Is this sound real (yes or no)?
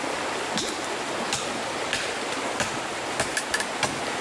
yes